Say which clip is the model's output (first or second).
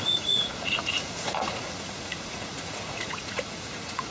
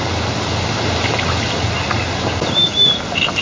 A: first